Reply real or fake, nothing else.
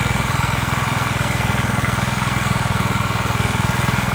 fake